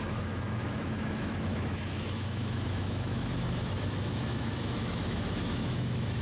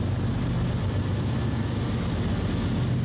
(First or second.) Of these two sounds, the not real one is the first